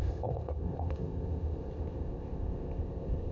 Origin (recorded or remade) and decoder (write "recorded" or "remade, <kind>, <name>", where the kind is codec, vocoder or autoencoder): remade, codec, ZipCodec